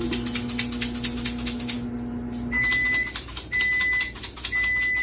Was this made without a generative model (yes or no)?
yes